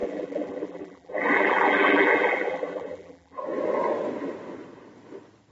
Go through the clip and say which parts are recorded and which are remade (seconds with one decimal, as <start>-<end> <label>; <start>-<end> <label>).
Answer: 0.0-3.4 remade; 3.4-5.5 recorded